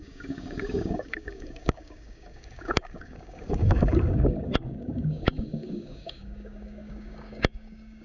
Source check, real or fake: fake